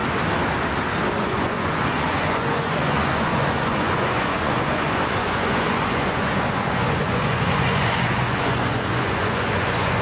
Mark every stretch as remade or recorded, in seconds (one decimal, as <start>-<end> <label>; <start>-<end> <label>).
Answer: 0.0-1.2 recorded; 1.2-10.0 remade